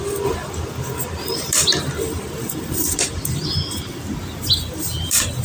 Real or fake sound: real